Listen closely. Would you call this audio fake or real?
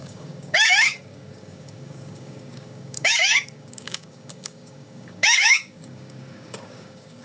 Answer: fake